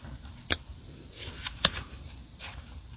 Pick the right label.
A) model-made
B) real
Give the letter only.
A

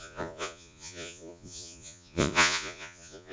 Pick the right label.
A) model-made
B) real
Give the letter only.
A